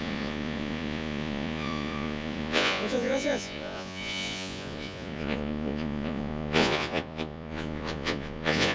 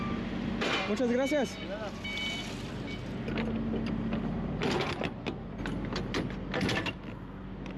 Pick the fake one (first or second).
first